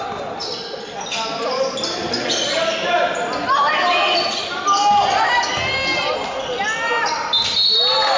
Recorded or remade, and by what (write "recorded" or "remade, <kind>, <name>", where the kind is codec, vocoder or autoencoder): recorded